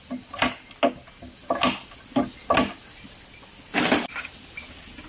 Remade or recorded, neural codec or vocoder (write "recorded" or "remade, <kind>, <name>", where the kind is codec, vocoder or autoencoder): recorded